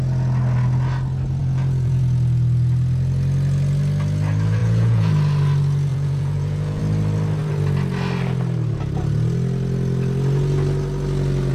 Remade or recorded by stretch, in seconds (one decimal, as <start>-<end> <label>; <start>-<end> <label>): 0.0-1.4 recorded; 1.4-2.0 remade; 2.0-4.6 recorded; 4.6-5.1 remade; 5.1-5.9 recorded; 5.9-6.8 remade; 6.8-11.5 recorded